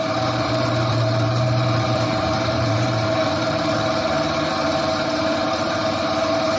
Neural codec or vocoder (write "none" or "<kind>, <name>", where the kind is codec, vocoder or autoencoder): vocoder, BigVGAN v2